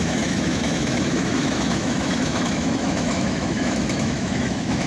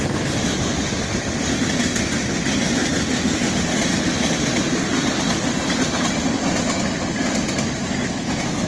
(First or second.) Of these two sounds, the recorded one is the second